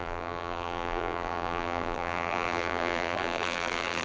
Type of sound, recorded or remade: remade